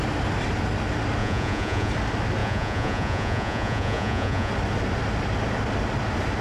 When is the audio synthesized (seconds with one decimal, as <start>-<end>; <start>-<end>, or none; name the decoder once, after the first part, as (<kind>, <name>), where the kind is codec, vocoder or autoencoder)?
1.2-1.9 (vocoder, Vocos); 2.4-4.5